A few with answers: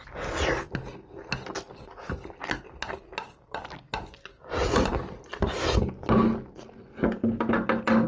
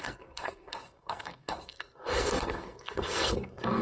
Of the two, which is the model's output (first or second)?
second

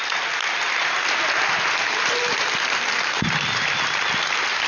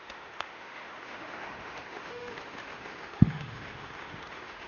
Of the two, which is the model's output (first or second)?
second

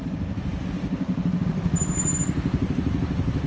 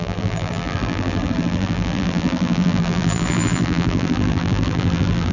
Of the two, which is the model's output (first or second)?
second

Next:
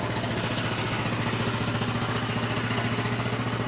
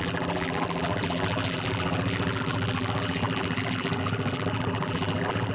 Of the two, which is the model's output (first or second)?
second